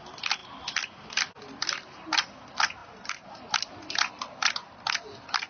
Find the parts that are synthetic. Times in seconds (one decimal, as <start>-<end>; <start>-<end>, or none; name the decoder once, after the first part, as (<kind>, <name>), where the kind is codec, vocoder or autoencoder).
none